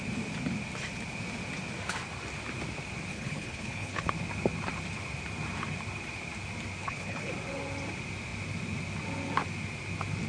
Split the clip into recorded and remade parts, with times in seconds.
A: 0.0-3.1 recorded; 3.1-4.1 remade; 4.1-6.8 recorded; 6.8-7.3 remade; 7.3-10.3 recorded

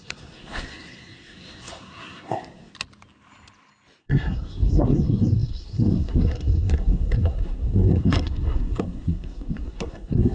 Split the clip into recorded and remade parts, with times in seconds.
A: 0.0-2.7 remade; 2.7-4.0 recorded; 4.0-10.3 remade

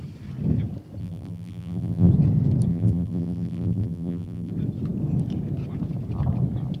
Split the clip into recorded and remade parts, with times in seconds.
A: 0.0-1.0 recorded; 1.0-2.1 remade; 2.1-2.7 recorded; 2.7-4.5 remade; 4.5-6.8 recorded

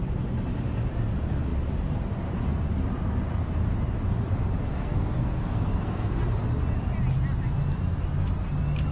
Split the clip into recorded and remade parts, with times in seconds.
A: 0.0-4.7 recorded; 4.7-6.2 remade; 6.2-8.9 recorded

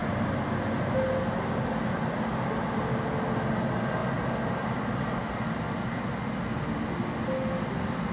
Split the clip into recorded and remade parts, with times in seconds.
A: 0.0-8.1 recorded